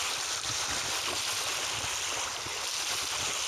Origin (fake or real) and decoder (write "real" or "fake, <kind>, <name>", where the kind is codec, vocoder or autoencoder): real